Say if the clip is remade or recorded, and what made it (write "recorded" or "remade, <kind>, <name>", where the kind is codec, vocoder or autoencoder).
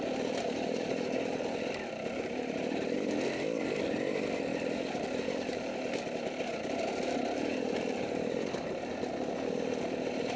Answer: recorded